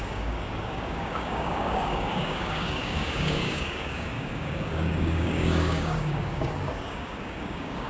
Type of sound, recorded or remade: remade